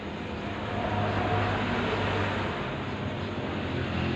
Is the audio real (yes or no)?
yes